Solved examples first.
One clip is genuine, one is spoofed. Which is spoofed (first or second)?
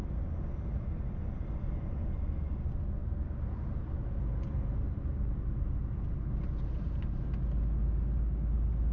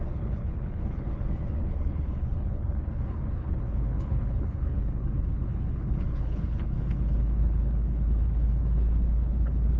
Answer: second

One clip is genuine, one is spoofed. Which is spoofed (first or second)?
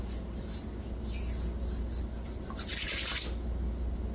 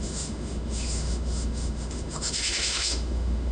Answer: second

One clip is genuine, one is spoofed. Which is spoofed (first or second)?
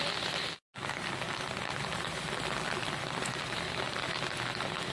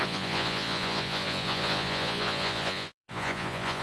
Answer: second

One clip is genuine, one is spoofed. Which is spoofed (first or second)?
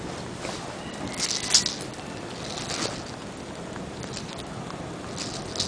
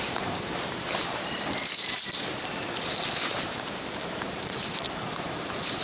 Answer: second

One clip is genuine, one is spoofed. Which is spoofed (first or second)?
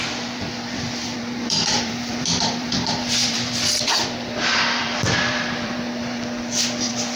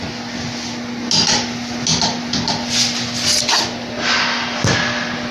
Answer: first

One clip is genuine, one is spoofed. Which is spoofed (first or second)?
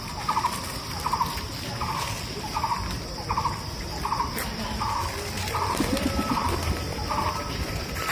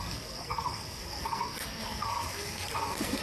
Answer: second